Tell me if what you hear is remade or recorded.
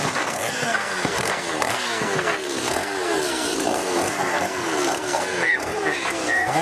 remade